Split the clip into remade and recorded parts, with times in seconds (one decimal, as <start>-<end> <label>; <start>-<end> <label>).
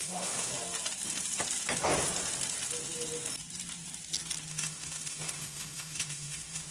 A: 0.0-0.5 remade; 0.5-4.5 recorded; 4.5-6.7 remade